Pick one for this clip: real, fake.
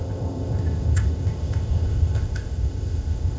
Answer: fake